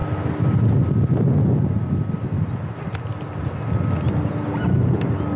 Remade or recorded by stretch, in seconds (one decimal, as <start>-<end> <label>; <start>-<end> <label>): 0.0-5.4 recorded